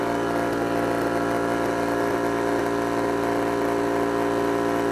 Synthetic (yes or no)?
no